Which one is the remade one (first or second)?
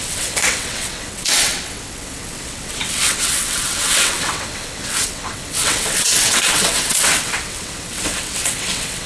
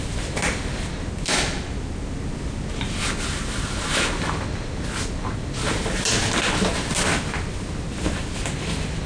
first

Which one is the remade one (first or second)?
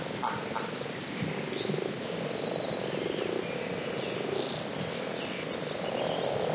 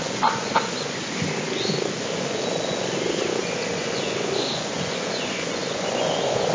second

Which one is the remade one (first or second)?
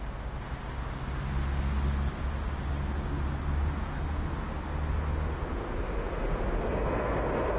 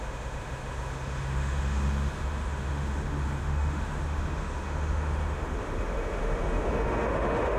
second